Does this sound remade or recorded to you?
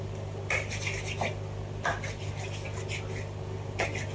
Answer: recorded